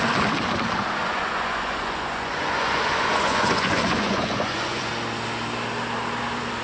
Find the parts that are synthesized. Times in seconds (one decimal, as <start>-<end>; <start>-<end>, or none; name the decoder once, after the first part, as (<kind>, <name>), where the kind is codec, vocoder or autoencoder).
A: 1.0-4.9 (vocoder, Vocos)